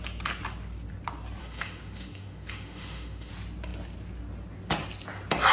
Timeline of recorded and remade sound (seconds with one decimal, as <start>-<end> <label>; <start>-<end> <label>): 0.0-1.4 recorded; 1.4-3.3 remade; 3.3-5.5 recorded